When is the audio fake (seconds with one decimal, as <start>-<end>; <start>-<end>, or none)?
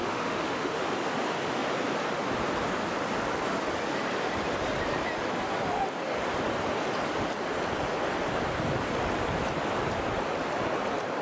0.0-0.9